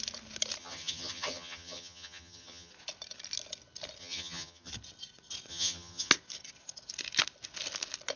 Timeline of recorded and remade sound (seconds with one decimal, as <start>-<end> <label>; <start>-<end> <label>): 0.0-0.6 recorded; 0.6-2.7 remade; 2.7-4.0 recorded; 4.0-4.7 remade; 4.7-5.5 recorded; 5.5-6.1 remade; 6.1-8.2 recorded